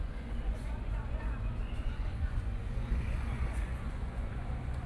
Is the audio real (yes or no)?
no